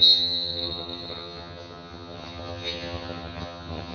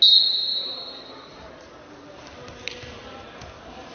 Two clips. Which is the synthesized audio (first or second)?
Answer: first